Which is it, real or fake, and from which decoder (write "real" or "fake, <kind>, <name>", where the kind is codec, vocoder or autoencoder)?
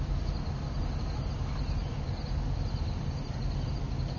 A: real